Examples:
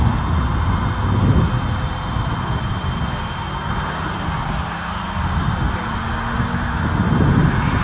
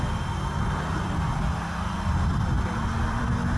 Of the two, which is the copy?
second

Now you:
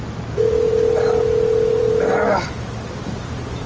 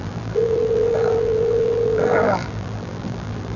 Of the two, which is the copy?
second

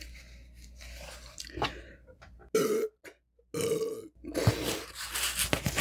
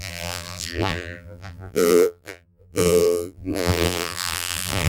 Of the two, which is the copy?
second